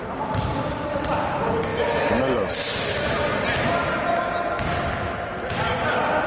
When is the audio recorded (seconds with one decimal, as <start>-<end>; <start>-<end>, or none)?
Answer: 0.0-6.3